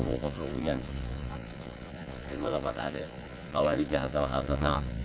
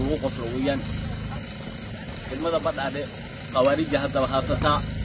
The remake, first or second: first